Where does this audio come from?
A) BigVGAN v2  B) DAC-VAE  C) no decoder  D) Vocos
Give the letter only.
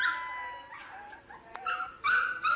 C